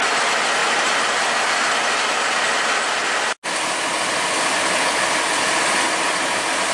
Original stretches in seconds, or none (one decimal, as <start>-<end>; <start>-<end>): 0.0-6.7